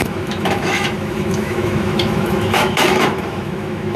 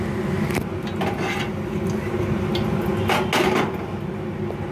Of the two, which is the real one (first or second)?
second